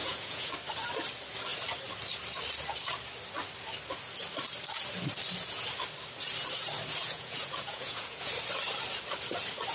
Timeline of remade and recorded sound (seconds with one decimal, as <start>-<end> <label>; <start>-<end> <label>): 0.0-0.5 remade; 0.5-7.0 recorded; 7.0-8.3 remade; 8.3-9.7 recorded